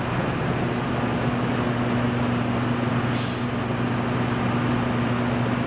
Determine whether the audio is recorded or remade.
recorded